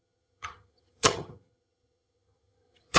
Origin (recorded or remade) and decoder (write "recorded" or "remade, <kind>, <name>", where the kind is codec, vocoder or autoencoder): remade, vocoder, HiFi-GAN